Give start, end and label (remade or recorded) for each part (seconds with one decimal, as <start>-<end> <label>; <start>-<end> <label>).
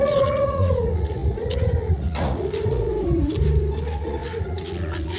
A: 0.0-2.9 remade; 2.9-3.8 recorded; 3.8-5.2 remade